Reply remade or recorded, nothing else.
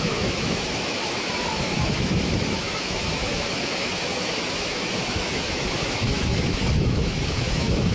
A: remade